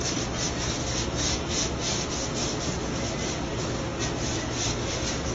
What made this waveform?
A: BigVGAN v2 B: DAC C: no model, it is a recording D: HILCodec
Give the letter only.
C